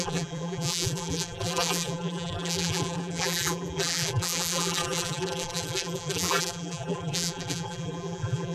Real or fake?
fake